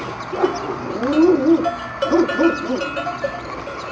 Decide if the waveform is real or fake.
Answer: real